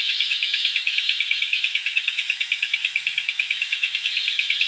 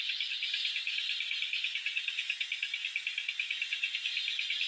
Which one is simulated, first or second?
first